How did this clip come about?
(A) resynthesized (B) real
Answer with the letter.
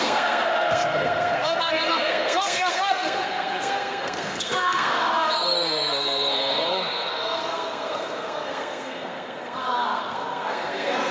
A